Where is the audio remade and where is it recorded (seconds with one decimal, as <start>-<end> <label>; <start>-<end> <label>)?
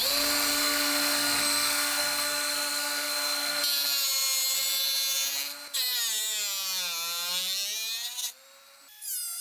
0.0-0.5 recorded; 0.5-3.6 remade; 3.6-9.4 recorded